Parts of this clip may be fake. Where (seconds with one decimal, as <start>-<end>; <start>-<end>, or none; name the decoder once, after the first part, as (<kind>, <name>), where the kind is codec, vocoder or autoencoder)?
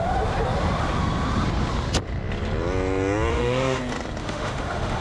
3.3-3.8 (autoencoder, DAC-VAE); 4.2-5.0